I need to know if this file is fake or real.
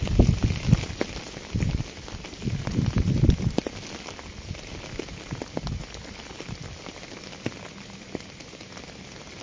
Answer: real